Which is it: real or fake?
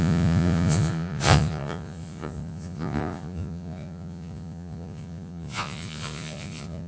fake